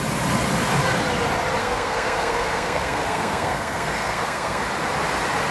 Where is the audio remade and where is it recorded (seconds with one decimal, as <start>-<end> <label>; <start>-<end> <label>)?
0.0-1.6 recorded; 1.6-4.6 remade; 4.6-5.5 recorded